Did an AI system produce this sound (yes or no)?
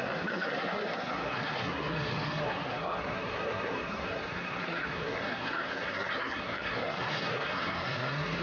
yes